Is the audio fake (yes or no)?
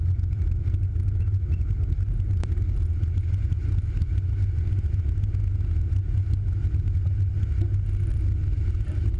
no